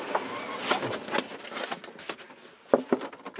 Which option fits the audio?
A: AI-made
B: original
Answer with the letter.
B